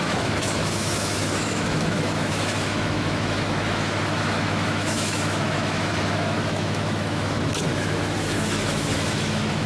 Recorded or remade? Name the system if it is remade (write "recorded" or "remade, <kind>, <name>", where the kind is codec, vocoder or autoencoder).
remade, autoencoder, DAC-VAE